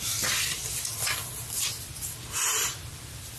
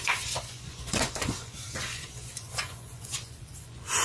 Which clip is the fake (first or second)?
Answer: second